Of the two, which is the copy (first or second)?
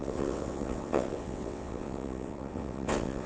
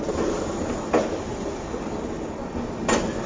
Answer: first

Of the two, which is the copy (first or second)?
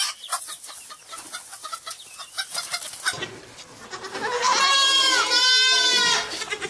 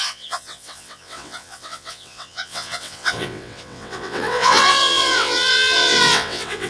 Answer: second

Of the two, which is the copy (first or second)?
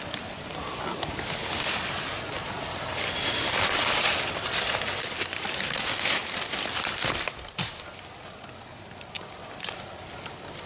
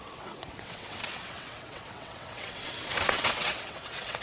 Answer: second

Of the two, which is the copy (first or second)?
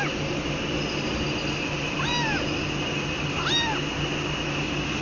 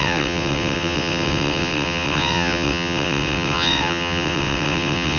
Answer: second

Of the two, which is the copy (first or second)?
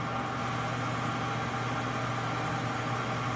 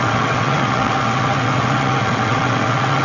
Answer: second